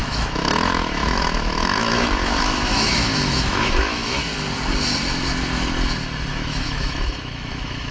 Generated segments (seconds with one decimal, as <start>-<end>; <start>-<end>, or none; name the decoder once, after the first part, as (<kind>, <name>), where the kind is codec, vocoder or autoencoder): 0.0-4.3 (autoencoder, DAC-VAE); 6.3-7.9